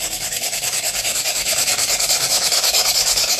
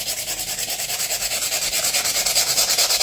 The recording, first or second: second